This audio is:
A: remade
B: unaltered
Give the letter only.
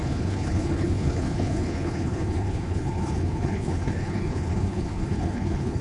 A